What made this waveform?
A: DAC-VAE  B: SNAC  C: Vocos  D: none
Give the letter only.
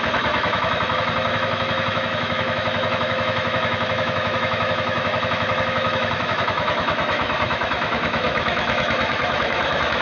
A